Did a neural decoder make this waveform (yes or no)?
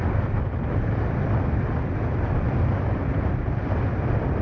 no